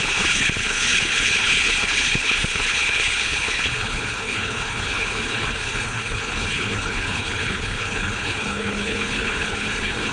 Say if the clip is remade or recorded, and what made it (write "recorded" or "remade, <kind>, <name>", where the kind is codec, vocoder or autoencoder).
remade, codec, HILCodec